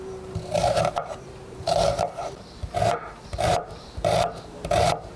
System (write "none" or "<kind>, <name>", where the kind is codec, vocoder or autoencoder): vocoder, BigVGAN v2